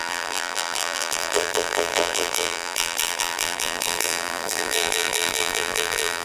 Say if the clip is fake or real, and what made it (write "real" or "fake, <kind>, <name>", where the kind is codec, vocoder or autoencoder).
fake, vocoder, BigVGAN v2